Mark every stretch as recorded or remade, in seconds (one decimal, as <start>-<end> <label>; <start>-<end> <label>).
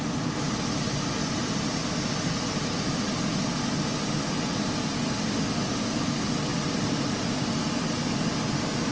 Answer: 0.0-1.2 recorded; 1.2-2.6 remade; 2.6-6.5 recorded; 6.5-7.6 remade; 7.6-8.9 recorded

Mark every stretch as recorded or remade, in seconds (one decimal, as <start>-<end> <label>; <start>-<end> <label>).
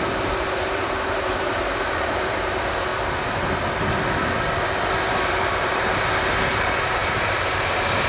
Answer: 0.0-2.9 remade; 2.9-5.6 recorded; 5.6-8.1 remade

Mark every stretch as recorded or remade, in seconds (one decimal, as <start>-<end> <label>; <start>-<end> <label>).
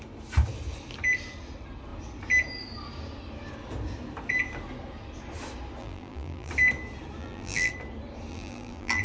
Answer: 0.0-5.8 recorded; 5.8-6.5 remade; 6.5-7.2 recorded; 7.2-7.7 remade; 7.7-8.3 recorded; 8.3-9.0 remade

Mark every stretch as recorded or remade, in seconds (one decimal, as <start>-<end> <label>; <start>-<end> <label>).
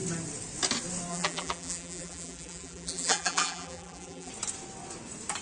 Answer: 0.0-1.1 recorded; 1.1-4.3 remade; 4.3-5.4 recorded